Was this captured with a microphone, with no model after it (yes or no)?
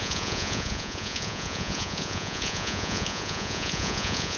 no